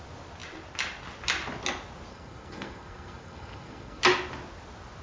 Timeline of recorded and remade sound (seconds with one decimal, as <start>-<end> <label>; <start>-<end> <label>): 0.0-2.1 recorded; 2.1-4.0 remade; 4.0-5.0 recorded